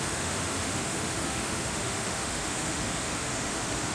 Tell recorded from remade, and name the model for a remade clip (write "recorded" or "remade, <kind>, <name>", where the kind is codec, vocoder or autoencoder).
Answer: remade, autoencoder, DAC-VAE